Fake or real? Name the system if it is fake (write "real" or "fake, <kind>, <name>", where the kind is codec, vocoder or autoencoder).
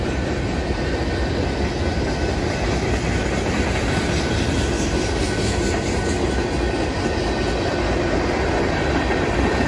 real